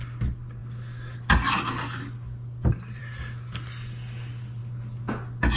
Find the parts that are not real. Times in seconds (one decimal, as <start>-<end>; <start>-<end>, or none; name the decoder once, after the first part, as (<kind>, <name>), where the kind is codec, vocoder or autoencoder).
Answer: none